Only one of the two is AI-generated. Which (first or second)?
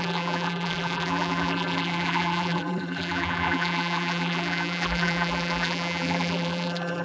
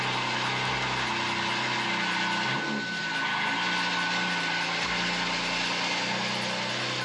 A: first